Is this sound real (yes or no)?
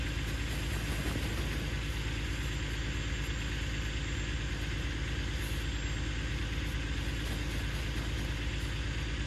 yes